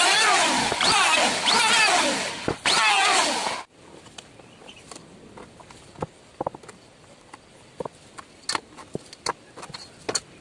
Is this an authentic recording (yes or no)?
yes